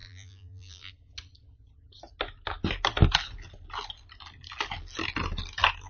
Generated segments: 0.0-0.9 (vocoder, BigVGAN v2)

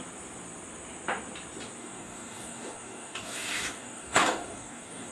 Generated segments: 1.8-5.1 (codec, DAC)

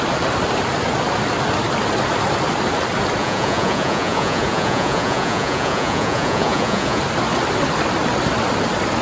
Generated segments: 3.2-7.0 (vocoder, Vocos)

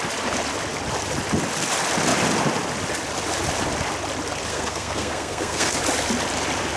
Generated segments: 4.5-5.8 (codec, SNAC)